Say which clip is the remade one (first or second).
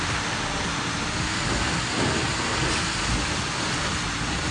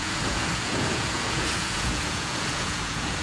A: second